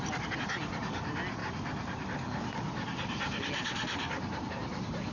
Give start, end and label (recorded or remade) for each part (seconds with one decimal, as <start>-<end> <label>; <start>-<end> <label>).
0.0-5.1 recorded